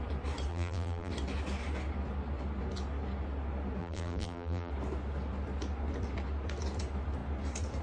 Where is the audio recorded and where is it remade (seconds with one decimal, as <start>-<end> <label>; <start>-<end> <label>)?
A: 0.0-0.5 recorded; 0.5-1.1 remade; 1.1-3.8 recorded; 3.8-4.7 remade; 4.7-7.8 recorded